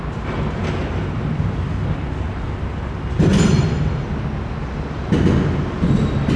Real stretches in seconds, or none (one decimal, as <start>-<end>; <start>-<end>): 0.0-0.8; 1.7-3.3; 3.9-6.4